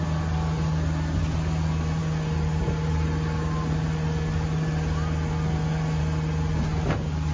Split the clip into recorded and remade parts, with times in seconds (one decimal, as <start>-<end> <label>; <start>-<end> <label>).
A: 0.0-7.3 recorded